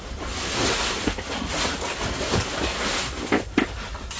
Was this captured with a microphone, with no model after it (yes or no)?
yes